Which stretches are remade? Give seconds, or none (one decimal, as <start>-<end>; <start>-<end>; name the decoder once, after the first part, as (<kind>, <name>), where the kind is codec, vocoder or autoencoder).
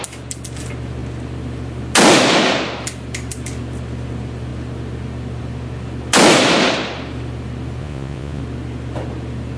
7.8-8.4 (vocoder, Vocos)